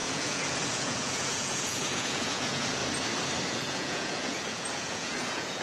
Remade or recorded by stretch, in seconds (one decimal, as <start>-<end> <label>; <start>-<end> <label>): 0.0-2.8 remade; 2.8-3.5 recorded; 3.5-5.6 remade